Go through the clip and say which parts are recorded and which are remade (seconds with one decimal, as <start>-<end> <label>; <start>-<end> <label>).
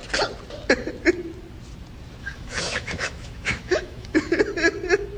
0.0-2.2 recorded; 2.2-4.4 remade; 4.4-5.2 recorded